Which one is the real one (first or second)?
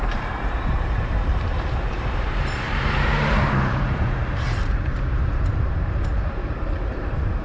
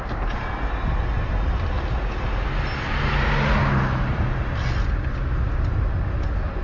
second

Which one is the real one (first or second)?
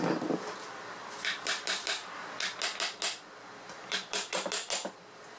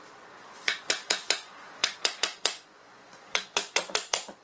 first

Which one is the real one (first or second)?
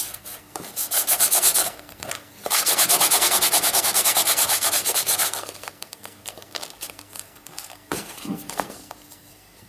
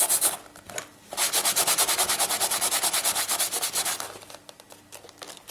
second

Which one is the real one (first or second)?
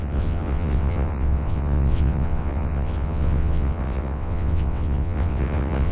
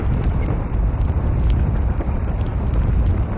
second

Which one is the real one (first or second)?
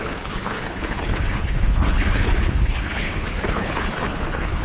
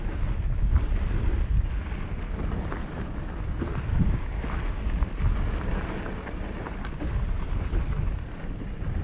second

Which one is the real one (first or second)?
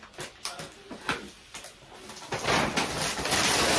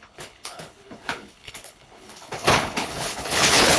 first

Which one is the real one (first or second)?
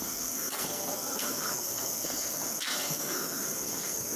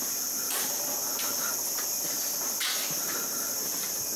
second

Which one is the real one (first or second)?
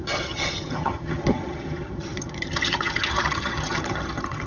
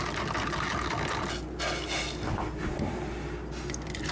second